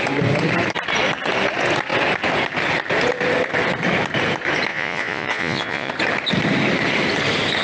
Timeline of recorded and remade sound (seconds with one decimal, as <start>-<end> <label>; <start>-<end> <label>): 0.0-4.7 recorded; 4.7-5.9 remade; 5.9-7.6 recorded